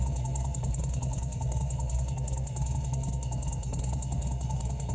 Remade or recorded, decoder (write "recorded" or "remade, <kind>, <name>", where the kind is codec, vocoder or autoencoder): remade, codec, SNAC